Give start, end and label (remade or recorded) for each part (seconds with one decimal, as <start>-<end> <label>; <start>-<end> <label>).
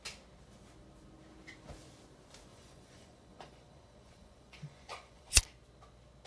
0.0-2.5 recorded; 2.5-5.4 remade; 5.4-6.3 recorded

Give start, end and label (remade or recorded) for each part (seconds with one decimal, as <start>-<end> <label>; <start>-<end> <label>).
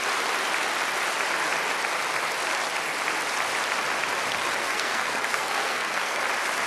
0.0-4.6 recorded; 4.6-6.2 remade; 6.2-6.7 recorded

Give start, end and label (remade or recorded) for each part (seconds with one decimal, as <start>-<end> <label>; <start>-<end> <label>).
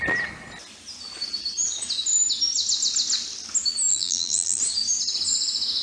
0.0-3.9 recorded; 3.9-4.6 remade; 4.6-5.8 recorded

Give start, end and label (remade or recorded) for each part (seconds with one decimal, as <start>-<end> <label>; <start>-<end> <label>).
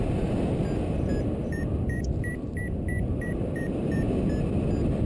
0.0-1.1 recorded; 1.1-4.1 remade; 4.1-5.0 recorded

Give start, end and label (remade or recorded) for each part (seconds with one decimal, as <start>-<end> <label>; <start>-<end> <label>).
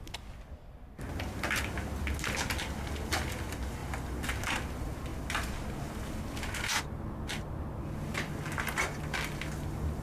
0.0-10.0 recorded